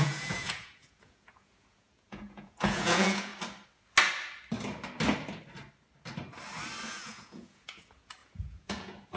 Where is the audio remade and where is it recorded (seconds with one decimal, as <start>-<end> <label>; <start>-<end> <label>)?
0.0-3.3 remade; 3.3-6.9 recorded; 6.9-9.2 remade